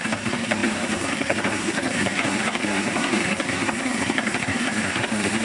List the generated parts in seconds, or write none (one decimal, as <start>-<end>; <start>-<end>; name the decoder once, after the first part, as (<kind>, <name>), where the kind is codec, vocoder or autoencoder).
0.0-5.4 (codec, SNAC)